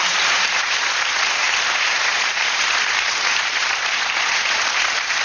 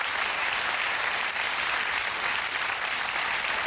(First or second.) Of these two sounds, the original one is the second